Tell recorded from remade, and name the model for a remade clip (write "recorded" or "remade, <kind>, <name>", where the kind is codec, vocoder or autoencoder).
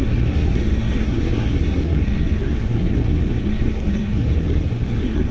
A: remade, codec, SNAC